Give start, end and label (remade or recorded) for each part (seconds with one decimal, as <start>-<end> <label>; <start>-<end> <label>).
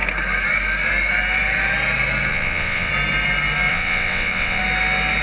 0.0-2.3 recorded; 2.3-2.9 remade; 2.9-3.7 recorded; 3.7-4.6 remade; 4.6-5.2 recorded